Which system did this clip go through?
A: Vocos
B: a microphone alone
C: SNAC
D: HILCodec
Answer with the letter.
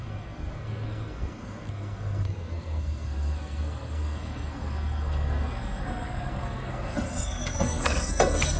C